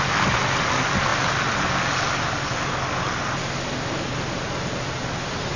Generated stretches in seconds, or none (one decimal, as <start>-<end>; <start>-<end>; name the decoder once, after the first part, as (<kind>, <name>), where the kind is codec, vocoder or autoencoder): none